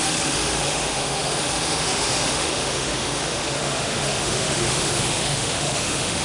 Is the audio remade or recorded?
remade